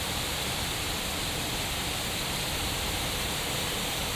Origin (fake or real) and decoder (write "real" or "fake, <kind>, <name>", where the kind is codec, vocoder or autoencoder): real